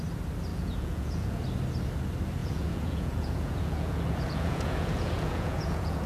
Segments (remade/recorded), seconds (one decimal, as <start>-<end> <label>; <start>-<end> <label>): 0.0-0.5 recorded; 0.5-1.4 remade; 1.4-2.4 recorded; 2.4-6.1 remade